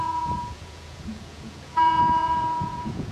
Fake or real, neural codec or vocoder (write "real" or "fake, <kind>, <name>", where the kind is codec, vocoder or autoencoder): fake, vocoder, Vocos